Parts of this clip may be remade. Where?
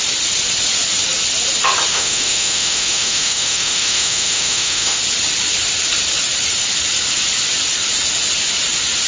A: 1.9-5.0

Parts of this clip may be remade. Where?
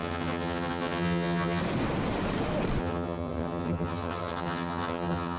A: 0.0-1.6; 2.8-5.4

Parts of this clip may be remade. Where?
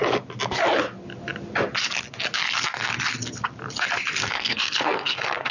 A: 4.2-5.5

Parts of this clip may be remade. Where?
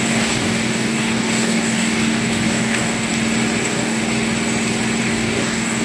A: 0.0-3.1; 3.6-4.0; 5.0-5.8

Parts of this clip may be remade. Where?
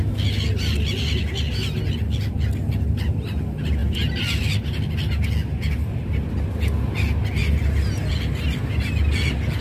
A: none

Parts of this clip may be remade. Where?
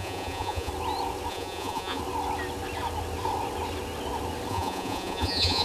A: 0.0-0.7; 1.3-2.0; 4.5-5.6